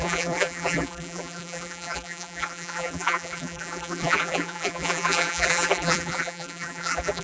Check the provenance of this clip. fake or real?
fake